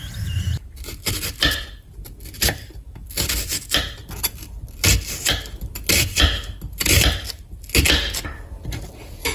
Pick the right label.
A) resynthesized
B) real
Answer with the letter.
B